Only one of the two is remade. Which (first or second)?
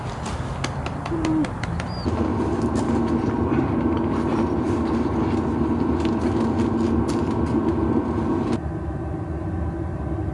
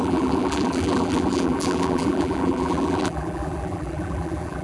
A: second